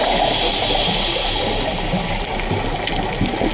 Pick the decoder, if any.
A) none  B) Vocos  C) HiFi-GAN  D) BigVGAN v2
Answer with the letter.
A